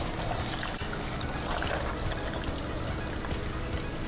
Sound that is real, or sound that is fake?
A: real